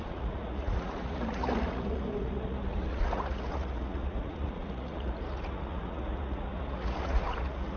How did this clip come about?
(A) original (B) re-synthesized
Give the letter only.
B